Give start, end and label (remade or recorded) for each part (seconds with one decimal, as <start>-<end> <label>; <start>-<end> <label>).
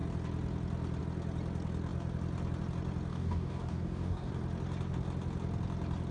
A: 0.0-3.1 recorded; 3.1-4.3 remade; 4.3-6.1 recorded